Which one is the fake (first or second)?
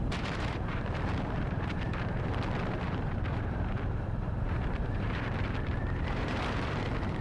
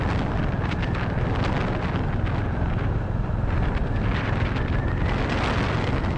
first